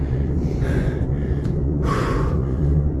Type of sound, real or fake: fake